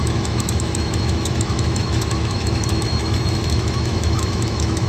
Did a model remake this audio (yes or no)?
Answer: yes